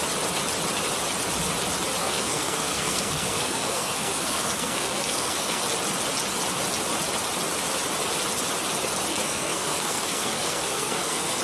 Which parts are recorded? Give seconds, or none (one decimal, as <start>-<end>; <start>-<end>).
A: 0.0-2.0; 5.6-9.1